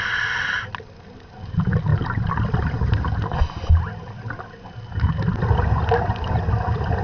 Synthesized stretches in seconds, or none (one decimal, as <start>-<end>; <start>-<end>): none

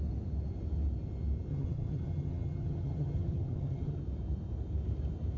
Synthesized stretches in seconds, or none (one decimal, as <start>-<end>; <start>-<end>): 1.5-4.0